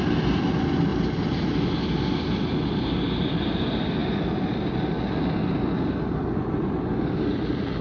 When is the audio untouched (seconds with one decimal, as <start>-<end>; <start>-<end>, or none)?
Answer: 0.0-7.8